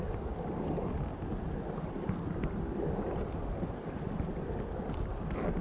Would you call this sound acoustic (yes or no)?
yes